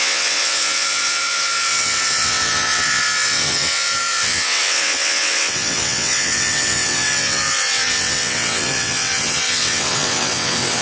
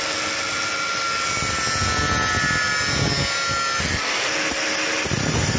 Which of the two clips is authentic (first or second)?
second